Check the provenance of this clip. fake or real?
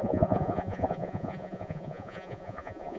fake